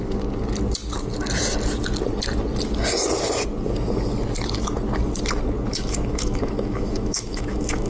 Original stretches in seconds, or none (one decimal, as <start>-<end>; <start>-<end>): 0.0-5.7